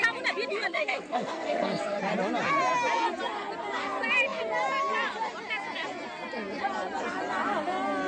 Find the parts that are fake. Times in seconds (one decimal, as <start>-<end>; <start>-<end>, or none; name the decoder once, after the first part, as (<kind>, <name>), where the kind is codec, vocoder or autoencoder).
0.7-2.0 (codec, SNAC)